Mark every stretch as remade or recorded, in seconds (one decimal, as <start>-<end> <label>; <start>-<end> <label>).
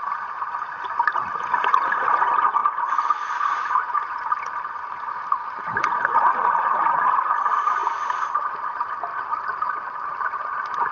0.0-2.6 remade; 2.6-6.9 recorded; 6.9-10.9 remade